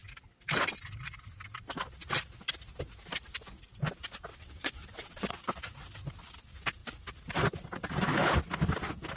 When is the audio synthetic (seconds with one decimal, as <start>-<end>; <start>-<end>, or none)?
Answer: 4.3-5.3